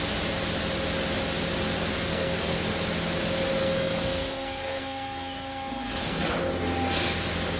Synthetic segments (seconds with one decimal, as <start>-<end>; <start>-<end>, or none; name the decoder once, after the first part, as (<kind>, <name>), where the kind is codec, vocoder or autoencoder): 2.1-2.6 (codec, SNAC); 3.6-6.2